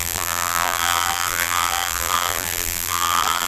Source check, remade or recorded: remade